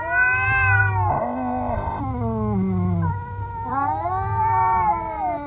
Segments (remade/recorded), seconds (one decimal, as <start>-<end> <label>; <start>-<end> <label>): 0.0-1.1 recorded; 1.1-2.0 remade; 2.0-5.5 recorded